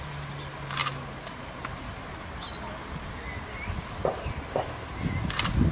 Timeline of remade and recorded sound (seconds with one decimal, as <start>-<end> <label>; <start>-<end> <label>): 0.0-5.7 recorded